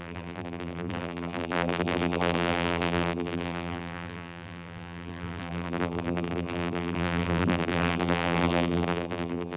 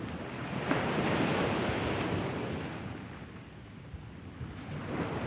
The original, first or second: second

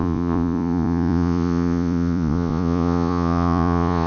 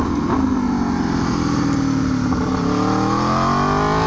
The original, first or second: second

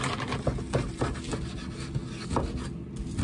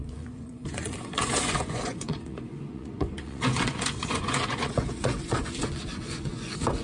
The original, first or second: first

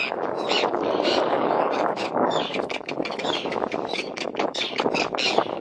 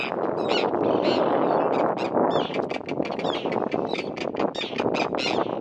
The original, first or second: second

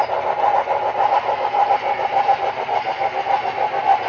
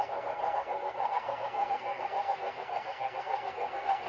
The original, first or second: first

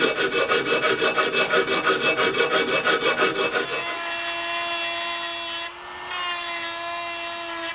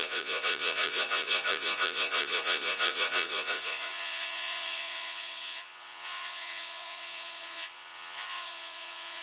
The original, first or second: first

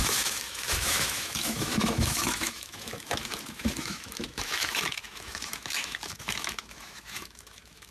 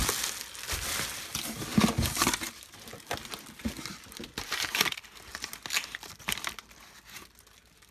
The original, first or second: second